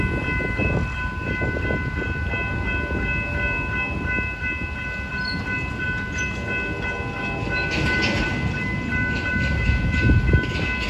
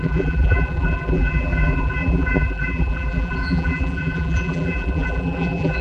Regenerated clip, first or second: second